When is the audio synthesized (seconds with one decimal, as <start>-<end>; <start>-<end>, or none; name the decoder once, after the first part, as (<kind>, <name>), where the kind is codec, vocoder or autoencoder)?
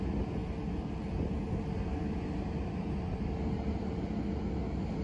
0.4-1.1 (vocoder, BigVGAN v2)